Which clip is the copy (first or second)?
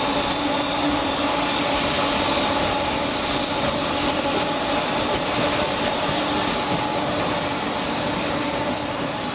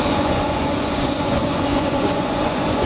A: second